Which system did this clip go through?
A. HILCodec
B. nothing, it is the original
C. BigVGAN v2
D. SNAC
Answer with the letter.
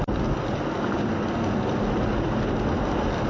B